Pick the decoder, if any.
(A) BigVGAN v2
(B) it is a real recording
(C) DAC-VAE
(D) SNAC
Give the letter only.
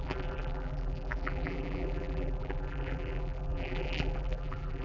A